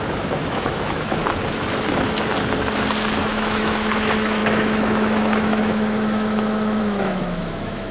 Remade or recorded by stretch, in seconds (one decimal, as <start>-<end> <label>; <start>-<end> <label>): 0.0-1.2 remade; 1.2-3.2 recorded; 3.2-7.9 remade